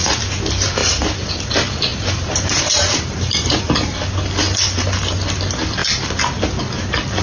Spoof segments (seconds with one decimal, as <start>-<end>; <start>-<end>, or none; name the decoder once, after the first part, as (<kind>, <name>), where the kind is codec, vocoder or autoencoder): 0.8-1.3 (vocoder, BigVGAN v2); 1.9-3.7